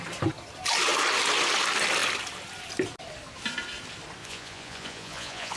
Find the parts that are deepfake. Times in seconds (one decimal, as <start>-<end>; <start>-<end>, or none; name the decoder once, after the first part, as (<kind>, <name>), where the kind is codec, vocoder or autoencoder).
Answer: 4.2-5.6 (vocoder, Vocos)